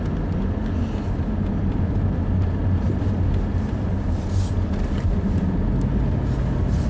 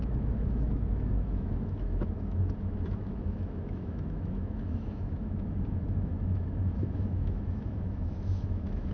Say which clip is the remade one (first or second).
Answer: second